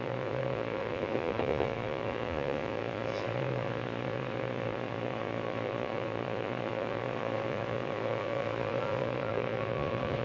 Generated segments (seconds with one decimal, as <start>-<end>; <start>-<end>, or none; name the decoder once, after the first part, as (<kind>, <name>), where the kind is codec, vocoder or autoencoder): 0.0-10.2 (vocoder, Vocos)